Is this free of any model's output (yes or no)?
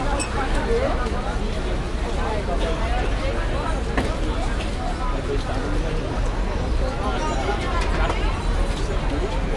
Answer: yes